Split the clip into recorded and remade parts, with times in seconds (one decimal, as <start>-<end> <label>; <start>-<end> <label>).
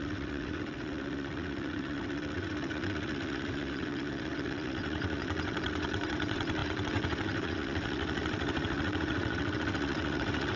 0.0-10.6 remade